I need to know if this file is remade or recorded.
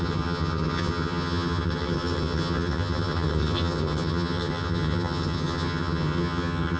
remade